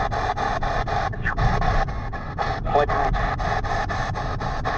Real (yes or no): yes